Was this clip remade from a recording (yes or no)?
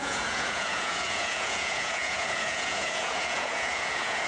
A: yes